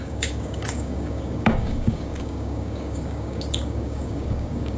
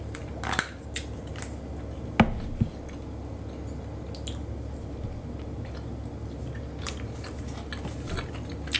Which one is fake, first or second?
first